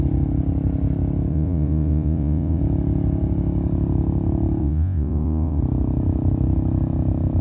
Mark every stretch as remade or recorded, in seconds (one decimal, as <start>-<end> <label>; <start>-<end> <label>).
0.0-1.3 recorded; 1.3-2.6 remade; 2.6-4.6 recorded; 4.6-5.6 remade; 5.6-7.4 recorded